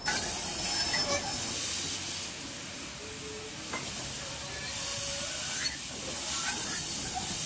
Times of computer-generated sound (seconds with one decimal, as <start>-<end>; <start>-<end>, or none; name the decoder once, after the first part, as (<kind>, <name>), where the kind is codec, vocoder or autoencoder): none